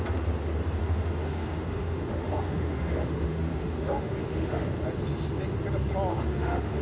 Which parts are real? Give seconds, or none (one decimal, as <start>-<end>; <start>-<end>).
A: 0.0-0.8; 4.8-6.1